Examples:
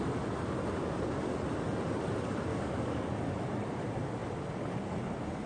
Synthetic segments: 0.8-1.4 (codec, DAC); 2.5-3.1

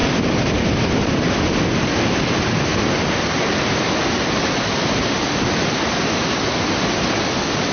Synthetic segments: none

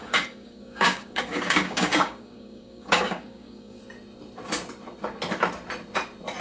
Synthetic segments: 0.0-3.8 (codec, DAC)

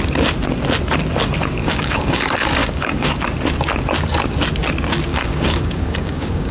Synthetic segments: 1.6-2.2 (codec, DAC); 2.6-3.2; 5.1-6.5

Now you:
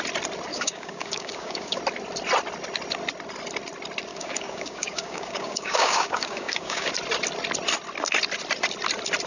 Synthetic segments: 0.5-1.8 (codec, DAC); 4.1-6.9